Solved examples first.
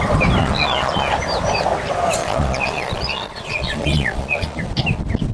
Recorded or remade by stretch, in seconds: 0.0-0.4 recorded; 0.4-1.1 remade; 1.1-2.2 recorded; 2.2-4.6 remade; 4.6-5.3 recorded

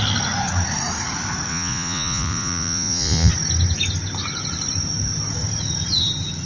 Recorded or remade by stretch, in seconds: 0.0-1.5 recorded; 1.5-3.3 remade; 3.3-6.5 recorded

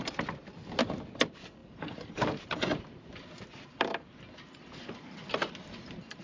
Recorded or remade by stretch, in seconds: 0.0-6.2 recorded

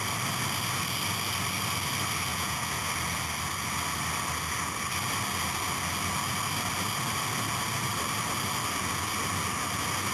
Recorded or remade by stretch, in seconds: 0.0-2.3 recorded; 2.3-2.9 remade; 2.9-10.1 recorded

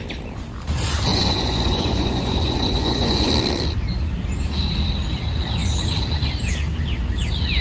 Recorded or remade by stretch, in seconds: 0.0-1.1 recorded; 1.1-3.3 remade; 3.3-7.6 recorded